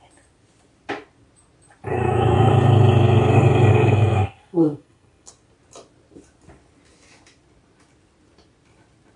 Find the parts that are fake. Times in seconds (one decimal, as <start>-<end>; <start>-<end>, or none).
1.9-2.5; 3.7-5.3

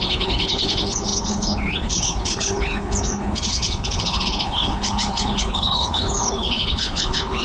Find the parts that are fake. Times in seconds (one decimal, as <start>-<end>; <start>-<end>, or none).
0.0-7.4